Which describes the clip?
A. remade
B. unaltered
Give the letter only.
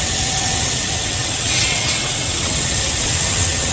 A